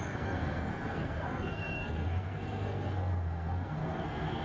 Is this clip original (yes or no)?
no